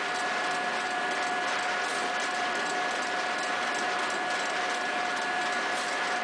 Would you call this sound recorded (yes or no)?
yes